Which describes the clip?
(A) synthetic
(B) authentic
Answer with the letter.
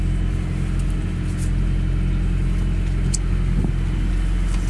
B